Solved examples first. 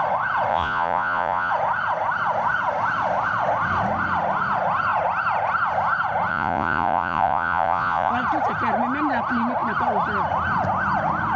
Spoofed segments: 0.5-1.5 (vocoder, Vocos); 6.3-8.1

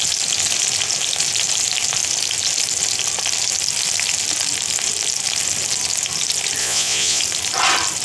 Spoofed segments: 6.6-7.2 (vocoder, Vocos)

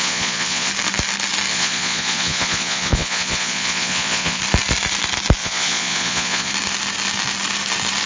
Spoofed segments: 0.0-0.7 (vocoder, Vocos); 1.5-4.4; 5.4-6.5